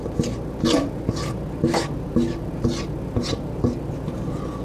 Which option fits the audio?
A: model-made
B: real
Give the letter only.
B